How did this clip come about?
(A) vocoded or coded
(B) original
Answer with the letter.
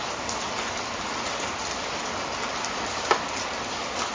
A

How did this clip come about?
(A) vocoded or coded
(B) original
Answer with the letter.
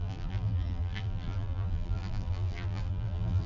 A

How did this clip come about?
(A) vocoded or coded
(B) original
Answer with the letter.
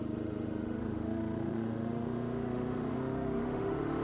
A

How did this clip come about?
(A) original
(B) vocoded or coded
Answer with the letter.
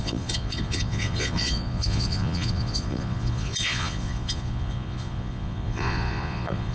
B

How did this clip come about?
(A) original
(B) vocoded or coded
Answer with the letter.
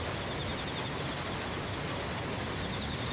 A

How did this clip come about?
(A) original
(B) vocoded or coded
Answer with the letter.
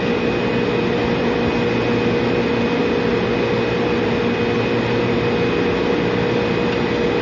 A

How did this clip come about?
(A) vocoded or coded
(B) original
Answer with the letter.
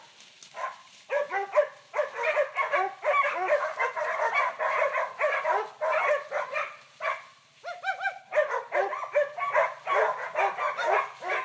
B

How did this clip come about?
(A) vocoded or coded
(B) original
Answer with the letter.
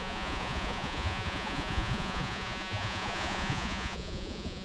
A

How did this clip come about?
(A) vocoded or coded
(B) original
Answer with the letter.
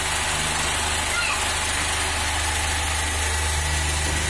B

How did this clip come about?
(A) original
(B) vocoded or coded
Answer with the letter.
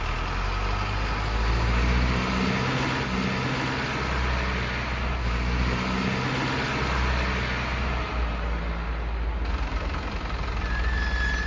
A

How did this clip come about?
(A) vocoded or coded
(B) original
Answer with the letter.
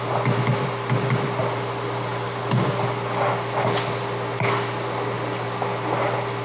B